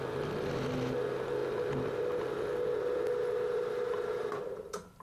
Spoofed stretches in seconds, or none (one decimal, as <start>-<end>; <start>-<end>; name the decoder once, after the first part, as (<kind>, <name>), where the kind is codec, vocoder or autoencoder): none

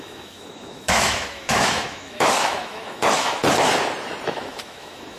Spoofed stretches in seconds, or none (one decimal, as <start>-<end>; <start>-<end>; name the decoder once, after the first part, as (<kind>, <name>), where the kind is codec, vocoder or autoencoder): 0.0-3.4 (autoencoder, DAC-VAE); 4.3-5.2

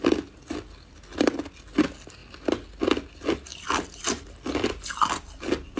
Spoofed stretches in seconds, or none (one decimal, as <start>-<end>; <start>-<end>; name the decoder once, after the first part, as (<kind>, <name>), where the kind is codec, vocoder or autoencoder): none

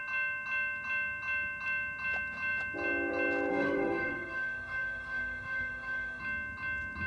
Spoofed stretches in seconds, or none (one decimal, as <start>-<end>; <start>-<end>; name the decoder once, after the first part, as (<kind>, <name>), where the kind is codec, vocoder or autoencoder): 3.5-6.2 (autoencoder, DAC-VAE)

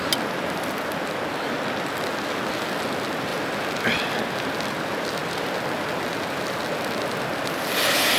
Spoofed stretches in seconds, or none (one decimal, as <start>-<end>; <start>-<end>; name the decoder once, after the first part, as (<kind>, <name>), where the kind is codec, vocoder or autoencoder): none

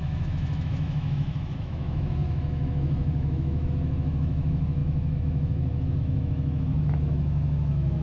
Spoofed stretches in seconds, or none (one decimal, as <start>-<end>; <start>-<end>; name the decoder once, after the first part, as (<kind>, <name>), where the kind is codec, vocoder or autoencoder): 0.0-8.0 (autoencoder, DAC-VAE)

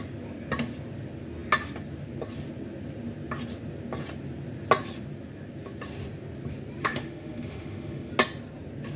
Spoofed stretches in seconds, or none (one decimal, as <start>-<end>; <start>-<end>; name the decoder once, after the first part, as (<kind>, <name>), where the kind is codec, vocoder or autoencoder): 6.8-8.1 (autoencoder, DAC-VAE)

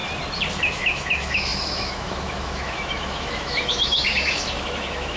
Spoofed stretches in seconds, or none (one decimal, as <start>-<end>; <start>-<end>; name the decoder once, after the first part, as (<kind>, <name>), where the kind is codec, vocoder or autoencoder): 0.6-5.2 (autoencoder, DAC-VAE)